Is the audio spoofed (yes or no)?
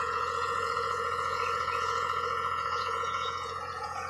yes